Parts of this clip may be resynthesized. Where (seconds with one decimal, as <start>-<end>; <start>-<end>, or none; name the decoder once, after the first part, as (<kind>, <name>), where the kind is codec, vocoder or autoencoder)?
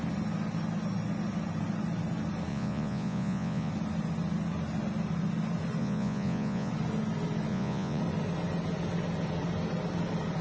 2.5-3.7 (vocoder, Vocos); 5.8-6.7; 7.5-8.0